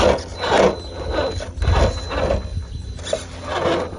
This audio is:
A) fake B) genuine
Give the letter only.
B